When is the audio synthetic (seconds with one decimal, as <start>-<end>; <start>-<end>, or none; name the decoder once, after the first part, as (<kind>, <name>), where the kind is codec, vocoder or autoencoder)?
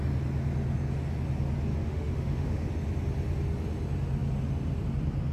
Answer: 1.7-2.7 (autoencoder, DAC-VAE)